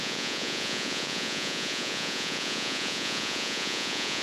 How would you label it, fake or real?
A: fake